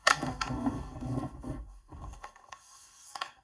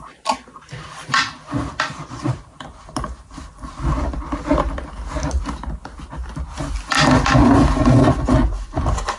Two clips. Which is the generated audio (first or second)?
first